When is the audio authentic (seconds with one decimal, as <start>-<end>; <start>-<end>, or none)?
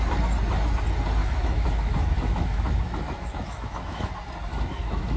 0.0-1.2; 4.1-4.5